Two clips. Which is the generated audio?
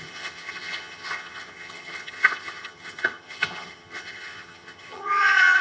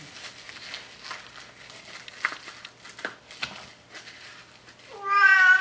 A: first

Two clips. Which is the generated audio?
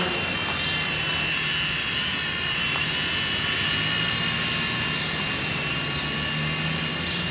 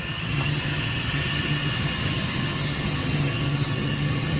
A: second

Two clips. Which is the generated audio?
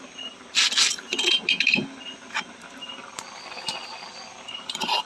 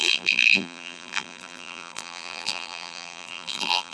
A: second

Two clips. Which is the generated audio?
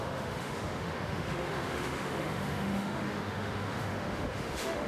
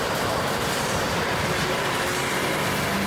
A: first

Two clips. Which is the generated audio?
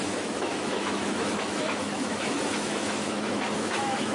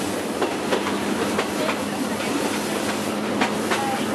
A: first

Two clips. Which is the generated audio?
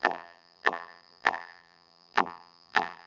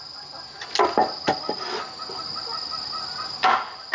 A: first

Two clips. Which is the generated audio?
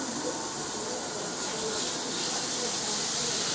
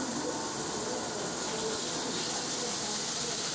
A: first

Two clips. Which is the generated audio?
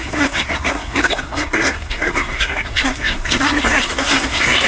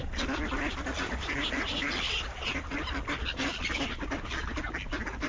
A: first